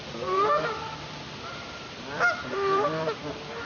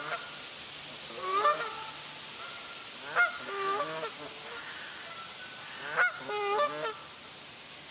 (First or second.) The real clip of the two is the second